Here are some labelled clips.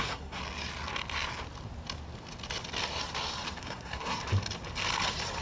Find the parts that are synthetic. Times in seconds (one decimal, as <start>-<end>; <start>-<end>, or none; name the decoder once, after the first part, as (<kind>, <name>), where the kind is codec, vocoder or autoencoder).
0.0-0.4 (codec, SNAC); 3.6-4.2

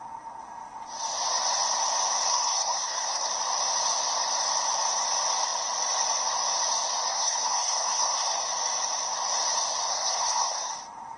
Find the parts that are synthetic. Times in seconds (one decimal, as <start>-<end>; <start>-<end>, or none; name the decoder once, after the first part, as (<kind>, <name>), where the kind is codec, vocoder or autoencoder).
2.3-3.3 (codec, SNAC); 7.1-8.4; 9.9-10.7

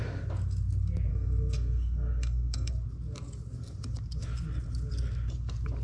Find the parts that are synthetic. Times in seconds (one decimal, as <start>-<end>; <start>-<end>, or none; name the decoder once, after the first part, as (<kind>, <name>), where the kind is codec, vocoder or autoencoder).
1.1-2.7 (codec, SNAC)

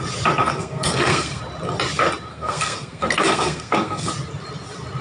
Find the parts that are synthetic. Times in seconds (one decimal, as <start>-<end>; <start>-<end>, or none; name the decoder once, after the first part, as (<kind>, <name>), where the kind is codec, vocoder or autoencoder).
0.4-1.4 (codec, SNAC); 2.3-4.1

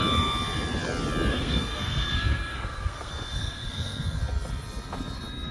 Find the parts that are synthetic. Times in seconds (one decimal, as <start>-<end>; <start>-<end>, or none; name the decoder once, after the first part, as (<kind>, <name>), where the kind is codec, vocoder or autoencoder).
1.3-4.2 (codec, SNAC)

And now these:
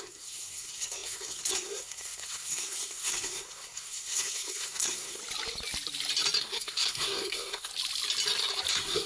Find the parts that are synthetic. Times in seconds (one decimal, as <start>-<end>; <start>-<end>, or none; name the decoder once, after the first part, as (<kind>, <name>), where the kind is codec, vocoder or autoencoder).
0.0-5.2 (codec, SNAC); 6.4-7.7; 8.7-9.1

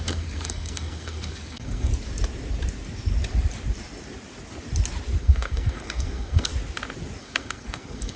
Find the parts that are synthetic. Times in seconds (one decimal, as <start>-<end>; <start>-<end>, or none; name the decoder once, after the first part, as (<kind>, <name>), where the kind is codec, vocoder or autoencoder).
0.0-1.9 (codec, SNAC); 5.2-6.5; 7.2-8.2

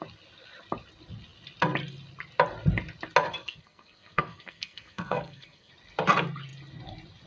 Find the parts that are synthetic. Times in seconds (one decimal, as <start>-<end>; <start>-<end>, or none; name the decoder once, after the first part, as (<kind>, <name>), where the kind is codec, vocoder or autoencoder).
3.4-5.7 (codec, SNAC)